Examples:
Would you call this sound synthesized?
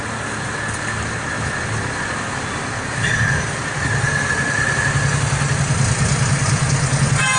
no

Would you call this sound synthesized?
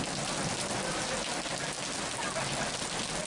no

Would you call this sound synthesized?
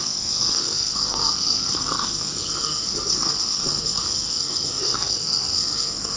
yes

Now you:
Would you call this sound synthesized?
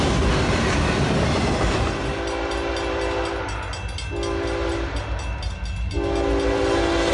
no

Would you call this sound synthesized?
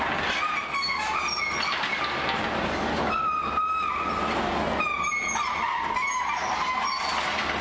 no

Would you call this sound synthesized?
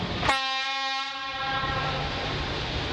no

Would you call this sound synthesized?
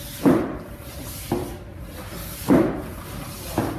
no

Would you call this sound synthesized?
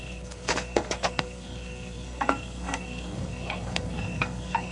yes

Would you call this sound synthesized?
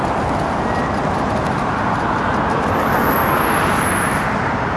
no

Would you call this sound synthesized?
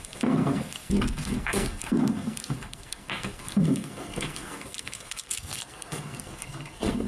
yes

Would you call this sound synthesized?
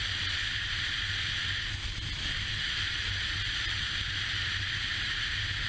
no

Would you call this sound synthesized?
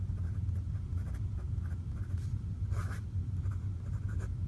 no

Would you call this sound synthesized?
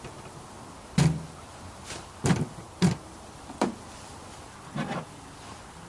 no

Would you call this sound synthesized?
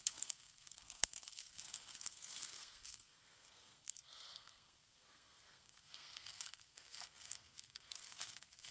yes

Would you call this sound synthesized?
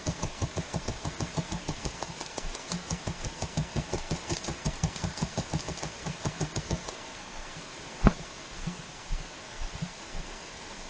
yes